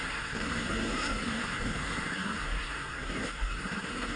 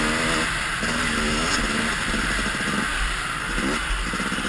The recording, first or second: second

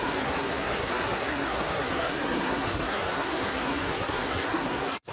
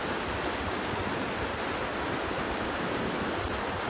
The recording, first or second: second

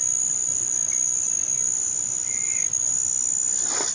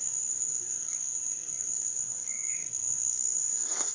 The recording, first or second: first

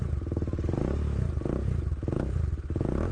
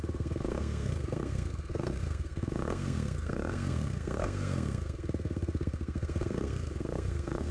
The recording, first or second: first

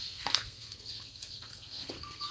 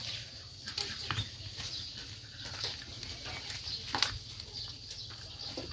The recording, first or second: second